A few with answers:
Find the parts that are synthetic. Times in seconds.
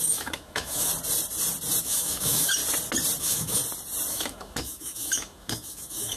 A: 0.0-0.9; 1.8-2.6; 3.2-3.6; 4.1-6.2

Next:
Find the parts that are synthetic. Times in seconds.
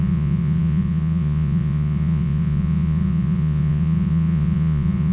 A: 0.0-5.1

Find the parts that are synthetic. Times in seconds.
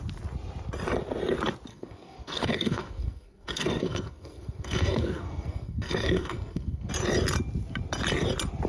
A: 1.7-6.9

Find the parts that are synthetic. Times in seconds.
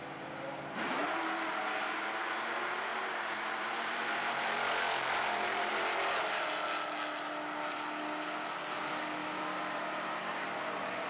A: 1.0-1.6; 2.9-5.7; 9.2-10.2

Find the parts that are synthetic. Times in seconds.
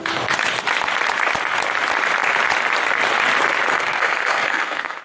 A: 3.7-5.0